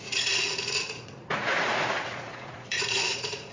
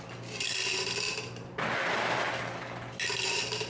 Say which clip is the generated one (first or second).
first